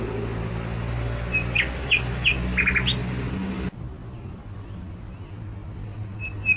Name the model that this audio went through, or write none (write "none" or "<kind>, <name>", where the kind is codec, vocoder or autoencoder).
none